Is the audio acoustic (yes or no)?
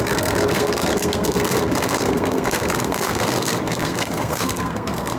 no